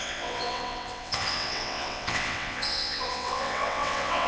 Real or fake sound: fake